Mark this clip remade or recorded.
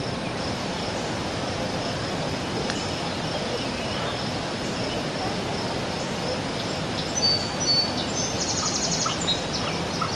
recorded